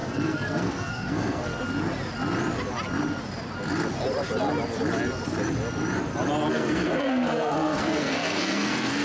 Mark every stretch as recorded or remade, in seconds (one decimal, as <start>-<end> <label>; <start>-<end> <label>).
0.0-1.5 remade; 1.5-6.5 recorded; 6.5-9.0 remade